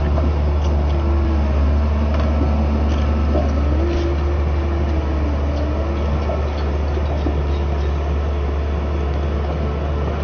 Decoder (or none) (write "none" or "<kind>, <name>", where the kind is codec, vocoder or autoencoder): none